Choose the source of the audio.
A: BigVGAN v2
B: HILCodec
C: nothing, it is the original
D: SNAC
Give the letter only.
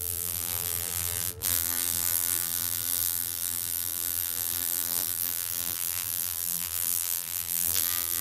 A